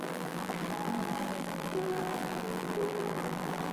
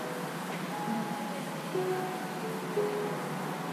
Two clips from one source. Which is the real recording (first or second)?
second